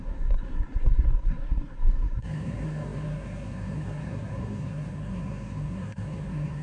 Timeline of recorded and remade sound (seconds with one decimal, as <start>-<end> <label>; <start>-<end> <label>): 0.0-6.6 remade